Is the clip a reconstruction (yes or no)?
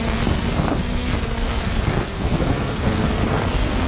yes